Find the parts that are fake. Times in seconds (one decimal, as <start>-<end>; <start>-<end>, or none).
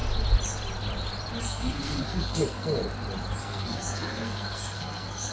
1.4-2.8; 3.4-5.3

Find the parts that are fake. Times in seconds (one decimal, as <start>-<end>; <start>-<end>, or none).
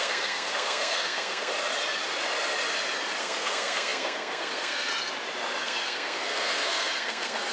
0.0-1.5; 3.2-4.9; 5.6-7.5